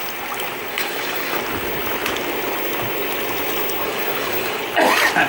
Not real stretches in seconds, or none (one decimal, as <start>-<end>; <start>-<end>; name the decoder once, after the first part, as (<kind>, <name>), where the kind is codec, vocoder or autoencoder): 0.7-1.4 (codec, DAC); 3.8-4.6